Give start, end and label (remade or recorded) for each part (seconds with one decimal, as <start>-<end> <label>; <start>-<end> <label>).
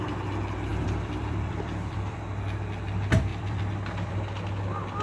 0.0-0.7 recorded; 0.7-2.2 remade; 2.2-3.3 recorded; 3.3-4.1 remade; 4.1-5.0 recorded